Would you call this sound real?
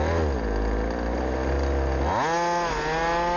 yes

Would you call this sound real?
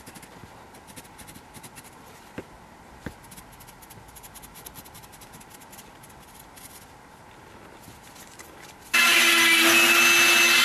yes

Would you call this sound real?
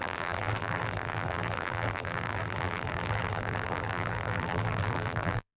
no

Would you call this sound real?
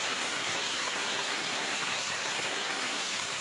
no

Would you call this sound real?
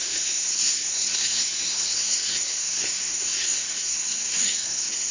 no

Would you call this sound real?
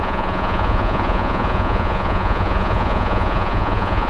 no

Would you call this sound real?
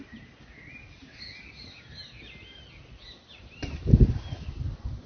yes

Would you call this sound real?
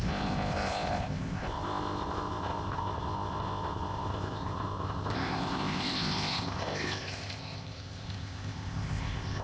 no